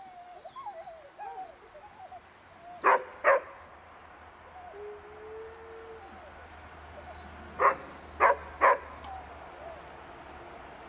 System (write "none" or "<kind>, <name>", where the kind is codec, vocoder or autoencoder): none